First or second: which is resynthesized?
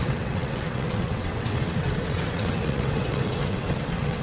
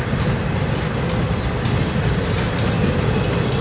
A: first